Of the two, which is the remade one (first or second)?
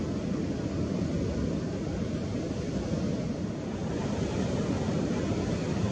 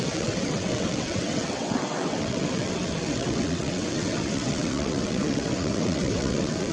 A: second